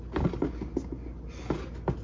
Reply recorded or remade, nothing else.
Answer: recorded